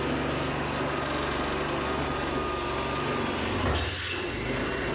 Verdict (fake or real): real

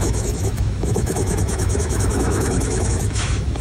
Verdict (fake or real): fake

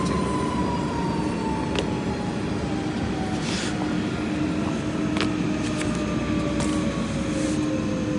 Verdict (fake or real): real